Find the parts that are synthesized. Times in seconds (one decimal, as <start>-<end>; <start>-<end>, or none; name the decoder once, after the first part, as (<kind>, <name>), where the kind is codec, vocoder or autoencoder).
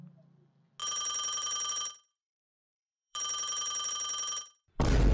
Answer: 0.8-1.7 (vocoder, BigVGAN v2); 2.1-3.9